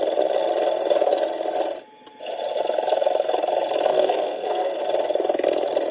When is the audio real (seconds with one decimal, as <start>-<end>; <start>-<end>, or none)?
0.0-3.9; 4.8-5.9